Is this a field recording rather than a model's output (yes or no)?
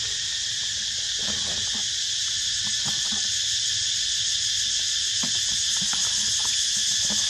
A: yes